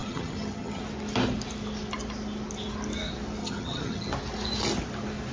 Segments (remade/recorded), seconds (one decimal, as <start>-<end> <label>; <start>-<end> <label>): 0.0-0.8 remade; 0.8-3.4 recorded; 3.4-4.1 remade; 4.1-5.3 recorded